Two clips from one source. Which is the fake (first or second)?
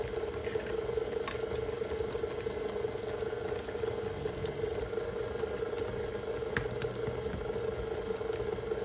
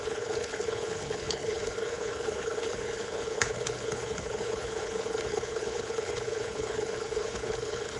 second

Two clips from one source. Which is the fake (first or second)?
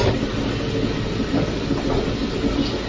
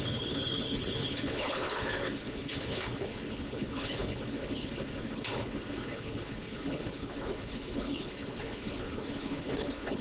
second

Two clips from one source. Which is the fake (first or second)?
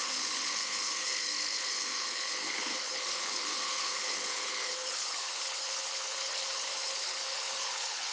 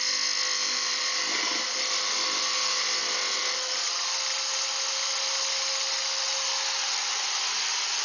first